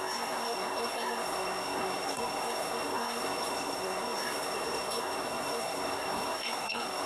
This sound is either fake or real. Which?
fake